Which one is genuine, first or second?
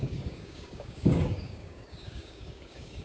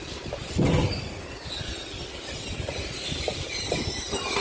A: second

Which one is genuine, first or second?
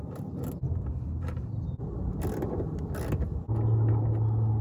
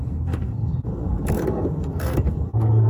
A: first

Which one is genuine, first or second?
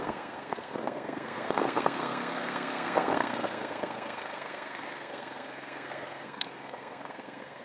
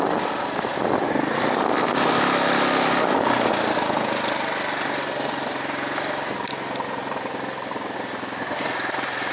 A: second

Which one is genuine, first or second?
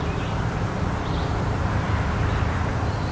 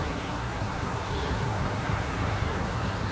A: first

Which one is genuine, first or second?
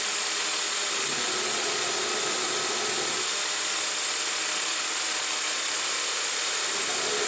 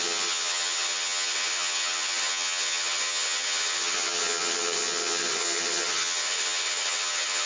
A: first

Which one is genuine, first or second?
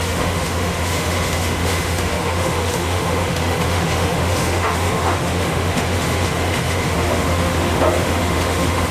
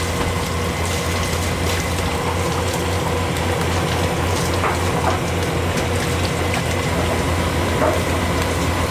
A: second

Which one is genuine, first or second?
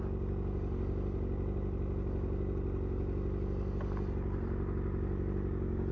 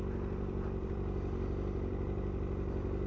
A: first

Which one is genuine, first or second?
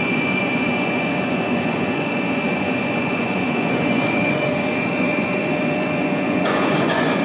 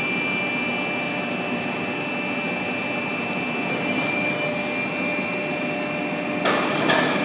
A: second